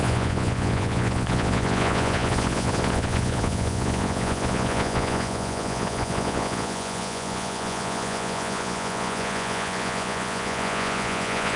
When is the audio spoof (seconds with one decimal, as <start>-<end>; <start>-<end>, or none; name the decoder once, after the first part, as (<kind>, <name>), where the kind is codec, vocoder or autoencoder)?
0.0-11.6 (vocoder, Vocos)